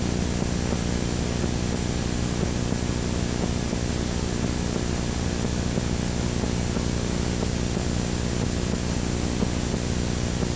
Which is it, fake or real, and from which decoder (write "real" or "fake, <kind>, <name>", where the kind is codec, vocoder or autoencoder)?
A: real